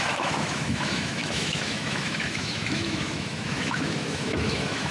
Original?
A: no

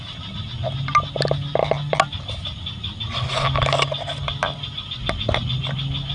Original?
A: yes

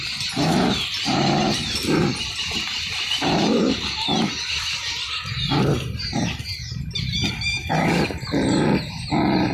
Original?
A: yes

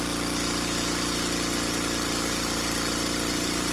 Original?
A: yes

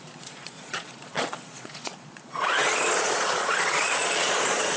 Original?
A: no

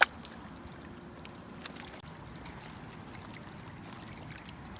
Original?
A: yes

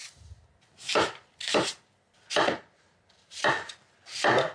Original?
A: yes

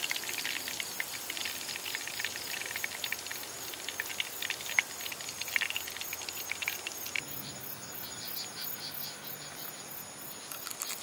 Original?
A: yes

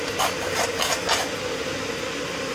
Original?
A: yes